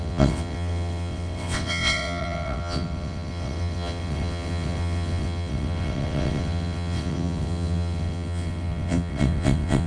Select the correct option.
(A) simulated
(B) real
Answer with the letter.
A